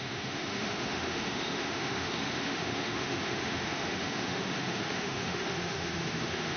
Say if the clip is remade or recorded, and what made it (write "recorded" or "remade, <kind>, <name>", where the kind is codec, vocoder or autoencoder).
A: remade, autoencoder, DAC-VAE